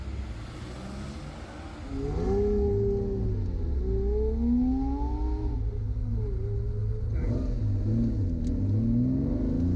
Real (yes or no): yes